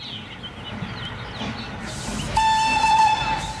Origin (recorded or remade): recorded